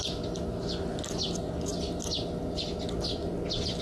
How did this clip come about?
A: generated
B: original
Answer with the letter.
B